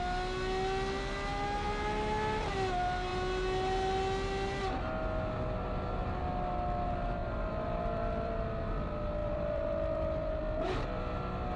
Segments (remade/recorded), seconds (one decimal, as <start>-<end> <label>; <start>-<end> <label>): 0.0-7.2 recorded; 7.2-8.6 remade; 8.6-9.2 recorded; 9.2-10.4 remade; 10.4-11.6 recorded